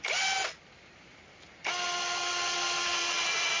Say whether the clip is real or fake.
real